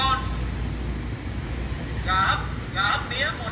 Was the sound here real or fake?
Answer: real